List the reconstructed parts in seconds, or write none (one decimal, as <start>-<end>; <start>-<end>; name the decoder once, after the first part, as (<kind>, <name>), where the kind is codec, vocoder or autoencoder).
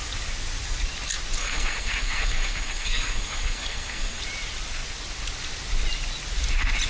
1.4-4.2 (codec, SNAC)